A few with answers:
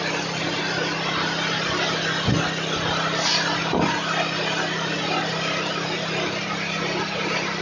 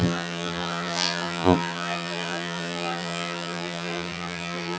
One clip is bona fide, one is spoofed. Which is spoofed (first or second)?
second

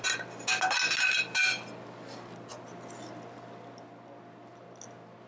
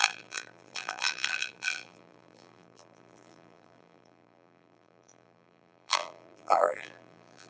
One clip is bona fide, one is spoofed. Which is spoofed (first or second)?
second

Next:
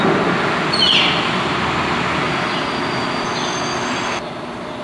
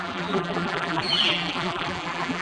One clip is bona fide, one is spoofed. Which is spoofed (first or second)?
second